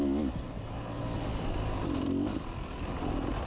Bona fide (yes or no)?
yes